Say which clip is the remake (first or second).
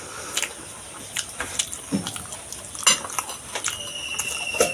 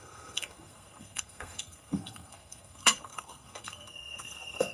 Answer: second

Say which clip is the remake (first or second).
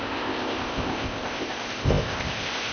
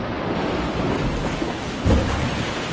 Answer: first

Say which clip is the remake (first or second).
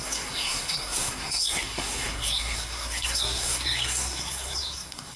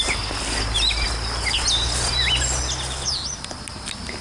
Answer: first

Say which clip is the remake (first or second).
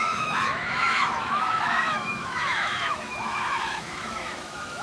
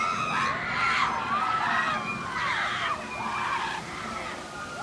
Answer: first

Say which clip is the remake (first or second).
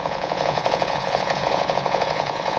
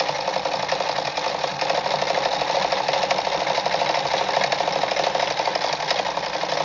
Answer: first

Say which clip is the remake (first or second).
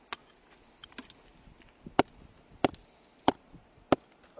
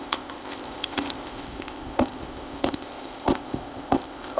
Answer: second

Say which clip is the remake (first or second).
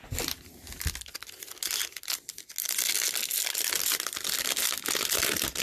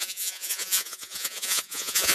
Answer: second